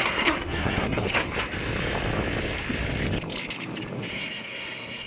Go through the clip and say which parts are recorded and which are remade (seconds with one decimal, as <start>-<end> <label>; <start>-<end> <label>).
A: 0.0-1.2 remade; 1.2-4.1 recorded; 4.1-5.1 remade